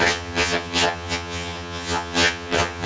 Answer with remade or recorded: remade